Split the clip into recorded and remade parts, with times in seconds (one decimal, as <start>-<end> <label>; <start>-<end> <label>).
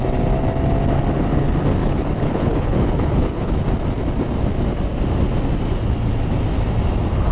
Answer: 0.0-1.8 recorded; 1.8-3.5 remade; 3.5-7.3 recorded